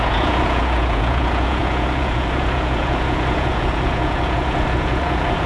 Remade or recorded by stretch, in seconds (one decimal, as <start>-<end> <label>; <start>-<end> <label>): 0.0-5.5 remade